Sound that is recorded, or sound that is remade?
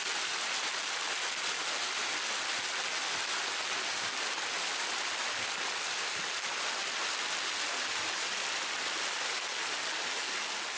recorded